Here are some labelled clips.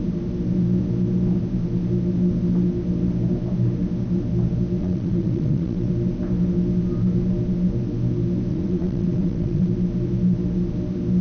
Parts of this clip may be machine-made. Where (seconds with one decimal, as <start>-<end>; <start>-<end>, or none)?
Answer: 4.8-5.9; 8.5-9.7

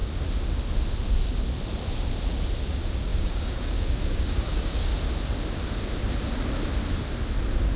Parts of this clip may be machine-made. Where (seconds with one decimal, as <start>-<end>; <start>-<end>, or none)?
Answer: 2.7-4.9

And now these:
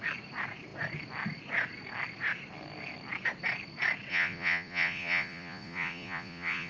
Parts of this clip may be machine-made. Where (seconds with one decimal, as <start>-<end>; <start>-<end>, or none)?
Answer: 4.1-6.7

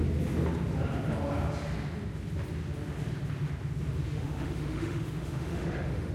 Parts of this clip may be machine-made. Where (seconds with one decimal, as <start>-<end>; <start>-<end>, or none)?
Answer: 4.1-6.1